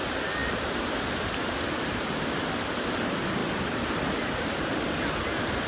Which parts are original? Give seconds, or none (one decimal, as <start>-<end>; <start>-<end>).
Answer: 0.0-3.4; 3.9-5.7